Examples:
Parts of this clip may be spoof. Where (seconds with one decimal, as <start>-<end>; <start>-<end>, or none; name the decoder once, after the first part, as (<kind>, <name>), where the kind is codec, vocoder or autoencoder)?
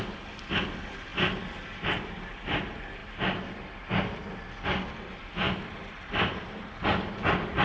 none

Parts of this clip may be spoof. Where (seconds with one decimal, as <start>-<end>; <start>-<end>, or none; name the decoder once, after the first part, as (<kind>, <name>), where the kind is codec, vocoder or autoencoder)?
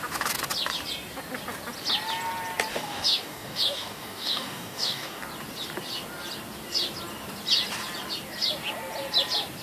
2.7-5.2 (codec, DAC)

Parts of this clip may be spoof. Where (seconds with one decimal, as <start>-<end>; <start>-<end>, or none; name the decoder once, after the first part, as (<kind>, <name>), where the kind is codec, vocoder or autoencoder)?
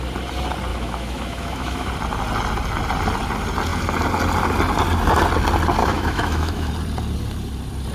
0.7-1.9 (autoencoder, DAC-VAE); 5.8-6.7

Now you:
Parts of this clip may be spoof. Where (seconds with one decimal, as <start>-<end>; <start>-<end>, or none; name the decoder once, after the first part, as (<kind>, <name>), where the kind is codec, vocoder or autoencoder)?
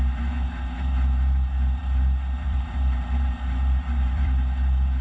1.8-5.0 (vocoder, BigVGAN v2)